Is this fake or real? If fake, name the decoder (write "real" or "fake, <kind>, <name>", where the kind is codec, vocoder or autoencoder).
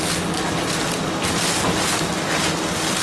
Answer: real